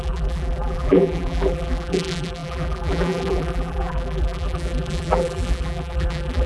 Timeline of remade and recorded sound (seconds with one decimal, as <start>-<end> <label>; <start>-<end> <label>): 0.0-6.5 remade